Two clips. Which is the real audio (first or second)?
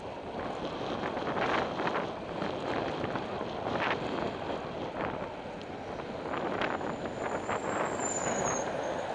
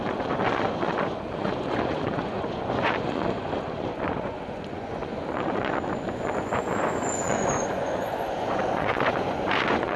first